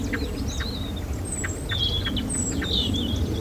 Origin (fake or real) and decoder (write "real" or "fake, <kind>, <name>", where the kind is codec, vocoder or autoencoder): real